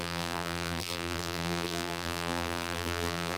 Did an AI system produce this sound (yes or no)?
yes